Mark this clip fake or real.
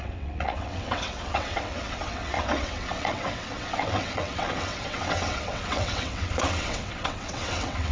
fake